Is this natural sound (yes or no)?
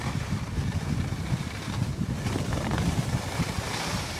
yes